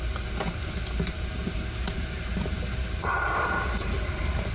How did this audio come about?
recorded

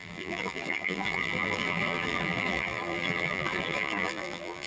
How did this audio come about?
remade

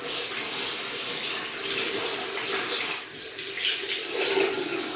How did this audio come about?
recorded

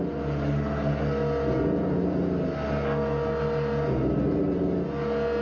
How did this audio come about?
recorded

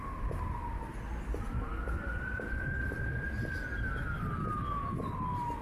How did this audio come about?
recorded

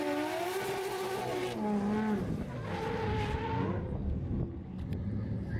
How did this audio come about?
recorded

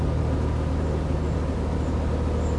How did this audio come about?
recorded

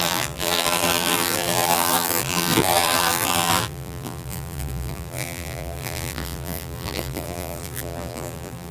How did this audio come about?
remade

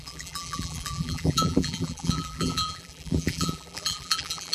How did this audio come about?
remade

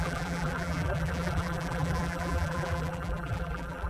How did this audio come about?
remade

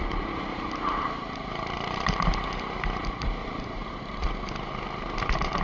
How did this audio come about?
remade